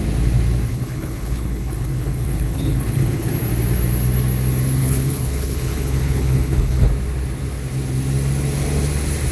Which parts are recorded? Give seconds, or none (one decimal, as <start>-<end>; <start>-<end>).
0.0-0.7; 3.3-4.8; 6.9-9.3